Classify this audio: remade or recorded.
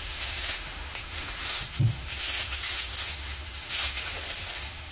remade